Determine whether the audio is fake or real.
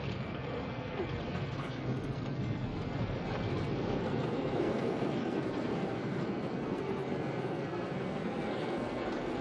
fake